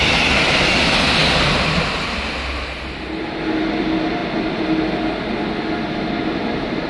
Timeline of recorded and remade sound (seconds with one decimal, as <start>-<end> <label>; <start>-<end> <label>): 0.0-6.9 recorded